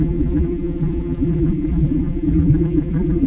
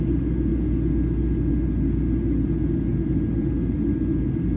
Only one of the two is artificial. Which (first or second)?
first